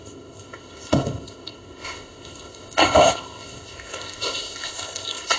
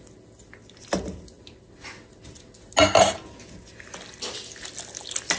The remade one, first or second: first